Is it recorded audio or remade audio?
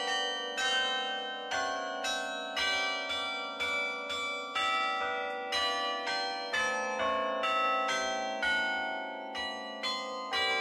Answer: recorded